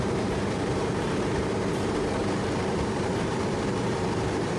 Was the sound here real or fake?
fake